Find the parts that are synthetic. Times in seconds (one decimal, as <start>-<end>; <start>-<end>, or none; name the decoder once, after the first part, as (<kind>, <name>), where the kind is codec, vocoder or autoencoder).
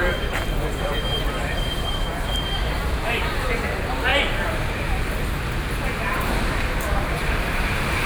0.0-4.1 (vocoder, BigVGAN v2); 5.8-8.1